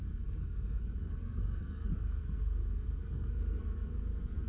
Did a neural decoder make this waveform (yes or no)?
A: yes